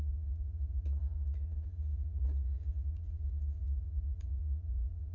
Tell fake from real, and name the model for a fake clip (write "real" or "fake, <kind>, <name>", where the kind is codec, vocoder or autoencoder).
fake, vocoder, Vocos